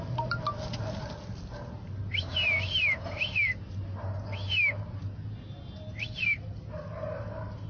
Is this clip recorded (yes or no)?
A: yes